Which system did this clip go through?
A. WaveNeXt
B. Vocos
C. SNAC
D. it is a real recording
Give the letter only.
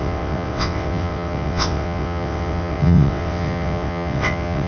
A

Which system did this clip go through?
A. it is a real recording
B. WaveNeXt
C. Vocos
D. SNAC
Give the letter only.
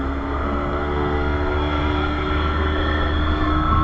D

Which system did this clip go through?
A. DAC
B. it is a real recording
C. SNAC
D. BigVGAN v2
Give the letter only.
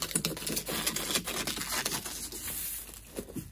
B